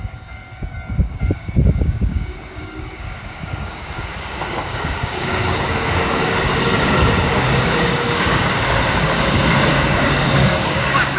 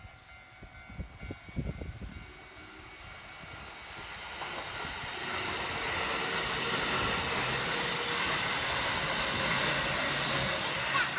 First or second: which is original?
second